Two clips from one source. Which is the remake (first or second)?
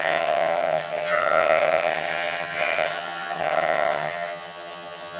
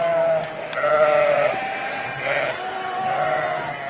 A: first